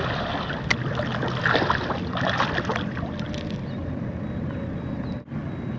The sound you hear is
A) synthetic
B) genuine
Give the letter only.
B